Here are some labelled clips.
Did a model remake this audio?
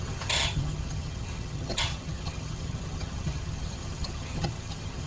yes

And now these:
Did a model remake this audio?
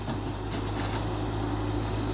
no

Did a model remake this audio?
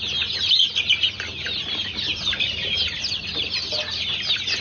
no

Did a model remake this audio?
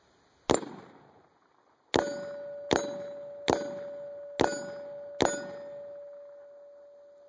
no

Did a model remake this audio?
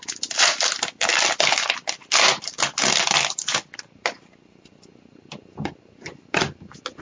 no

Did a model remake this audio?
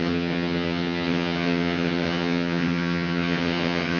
yes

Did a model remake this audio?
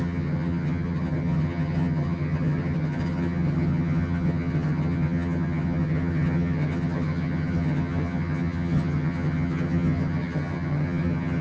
yes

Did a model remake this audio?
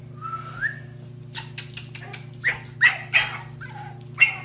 no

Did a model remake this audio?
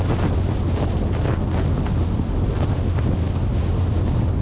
no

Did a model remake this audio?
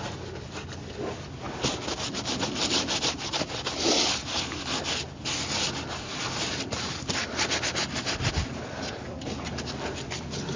no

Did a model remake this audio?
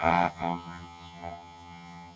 yes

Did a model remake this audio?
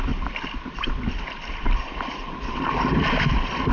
no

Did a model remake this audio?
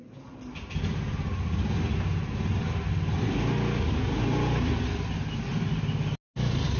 no